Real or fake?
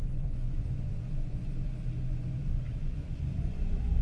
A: fake